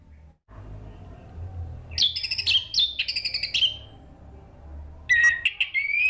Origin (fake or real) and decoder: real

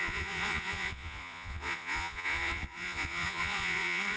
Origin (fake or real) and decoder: fake, vocoder, Vocos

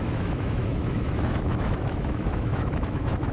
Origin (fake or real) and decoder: fake, autoencoder, DAC-VAE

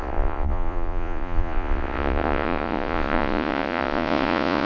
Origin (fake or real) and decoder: fake, vocoder, Vocos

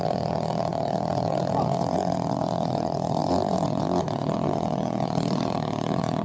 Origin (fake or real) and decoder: fake, vocoder, Vocos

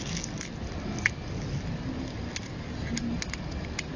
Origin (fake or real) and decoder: real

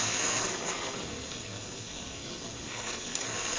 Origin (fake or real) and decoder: fake, codec, SNAC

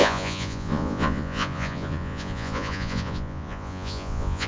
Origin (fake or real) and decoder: fake, vocoder, Vocos